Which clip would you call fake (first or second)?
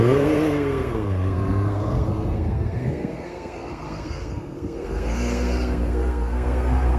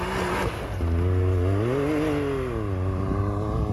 first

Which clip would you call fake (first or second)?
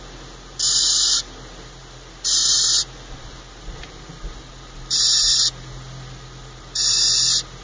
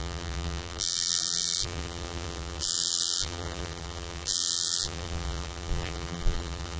second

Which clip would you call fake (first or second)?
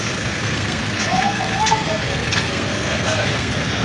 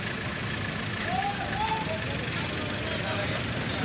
first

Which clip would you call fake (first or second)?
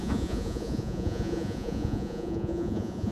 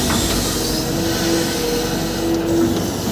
first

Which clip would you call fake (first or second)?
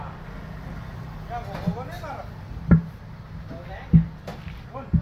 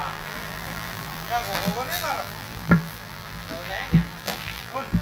second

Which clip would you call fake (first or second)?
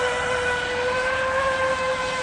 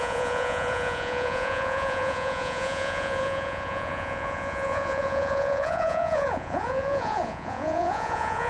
second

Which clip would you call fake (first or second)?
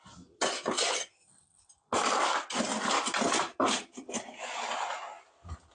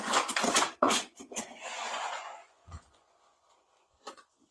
second